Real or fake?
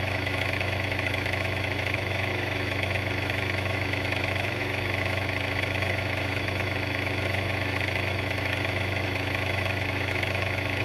fake